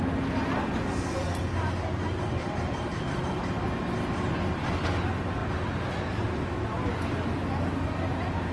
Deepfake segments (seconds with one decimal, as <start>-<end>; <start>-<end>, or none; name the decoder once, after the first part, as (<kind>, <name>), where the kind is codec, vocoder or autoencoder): 2.0-3.2 (vocoder, BigVGAN v2)